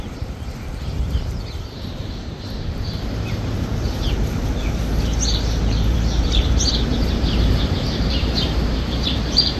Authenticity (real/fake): fake